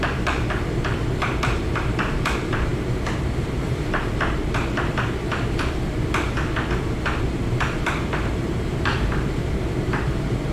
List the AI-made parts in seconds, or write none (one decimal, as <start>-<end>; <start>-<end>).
0.0-5.3; 7.3-10.5